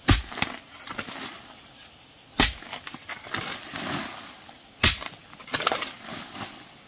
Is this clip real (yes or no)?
yes